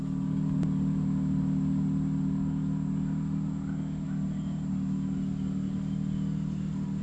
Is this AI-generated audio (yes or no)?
no